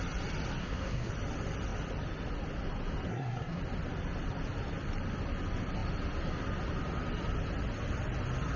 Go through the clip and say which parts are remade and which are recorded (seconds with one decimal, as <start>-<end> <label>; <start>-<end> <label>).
0.0-0.6 recorded; 0.6-1.1 remade; 1.1-3.1 recorded; 3.1-3.6 remade; 3.6-8.6 recorded

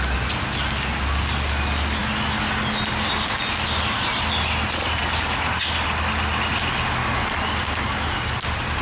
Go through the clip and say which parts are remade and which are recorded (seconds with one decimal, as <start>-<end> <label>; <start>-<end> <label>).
0.0-8.8 recorded

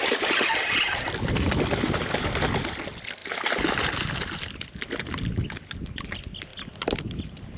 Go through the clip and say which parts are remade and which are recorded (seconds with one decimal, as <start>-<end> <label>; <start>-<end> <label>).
0.0-7.6 recorded

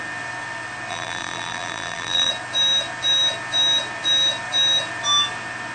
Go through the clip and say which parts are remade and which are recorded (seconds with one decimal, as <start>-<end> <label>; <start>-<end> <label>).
0.0-0.9 recorded; 0.9-2.3 remade; 2.3-5.7 recorded

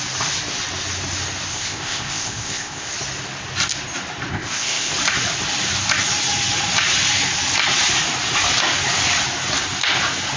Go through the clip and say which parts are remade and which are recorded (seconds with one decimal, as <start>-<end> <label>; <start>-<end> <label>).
0.0-1.5 recorded; 1.5-2.9 remade; 2.9-4.3 recorded; 4.3-4.9 remade; 4.9-10.4 recorded

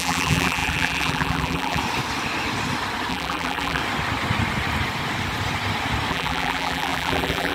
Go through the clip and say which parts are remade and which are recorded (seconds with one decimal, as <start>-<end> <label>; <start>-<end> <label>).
0.0-1.8 remade; 1.8-3.1 recorded; 3.1-3.8 remade; 3.8-6.1 recorded; 6.1-7.5 remade

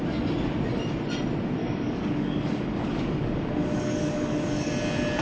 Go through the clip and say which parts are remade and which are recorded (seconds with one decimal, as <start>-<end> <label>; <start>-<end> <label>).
0.0-1.6 recorded; 1.6-4.7 remade; 4.7-5.2 recorded